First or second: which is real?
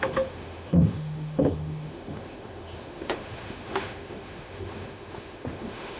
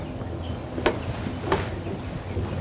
second